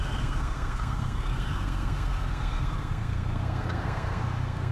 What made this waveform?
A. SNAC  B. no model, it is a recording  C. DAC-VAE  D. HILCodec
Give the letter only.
A